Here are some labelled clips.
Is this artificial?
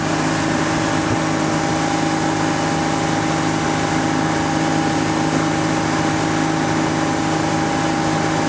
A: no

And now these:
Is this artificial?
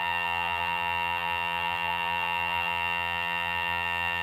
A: yes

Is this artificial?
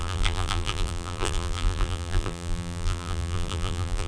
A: yes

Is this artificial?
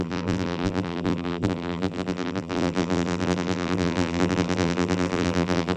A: yes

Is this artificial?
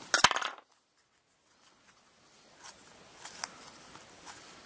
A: no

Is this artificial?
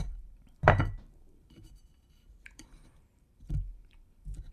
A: yes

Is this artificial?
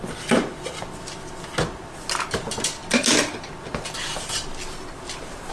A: no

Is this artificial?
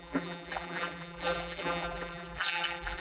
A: yes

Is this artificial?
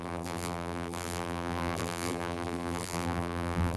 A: yes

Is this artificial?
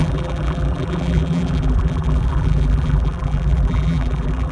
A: yes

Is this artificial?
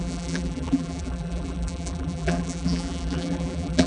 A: yes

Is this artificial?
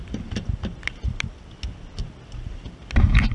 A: no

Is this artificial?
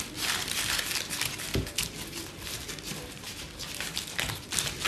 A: no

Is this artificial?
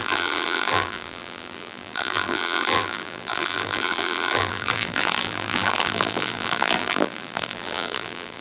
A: yes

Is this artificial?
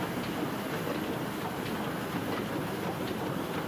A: no